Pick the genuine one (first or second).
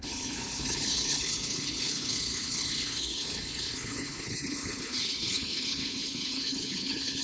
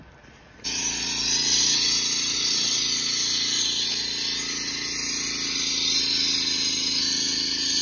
second